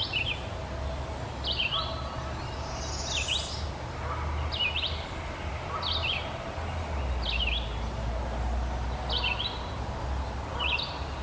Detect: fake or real real